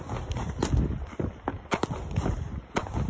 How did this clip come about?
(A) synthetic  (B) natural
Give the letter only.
B